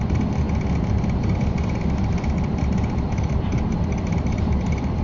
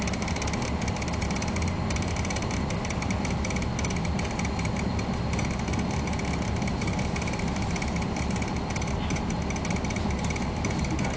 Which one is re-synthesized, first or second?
first